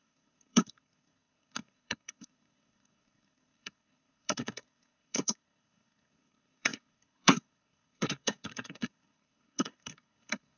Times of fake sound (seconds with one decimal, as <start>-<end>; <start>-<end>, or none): 0.0-10.6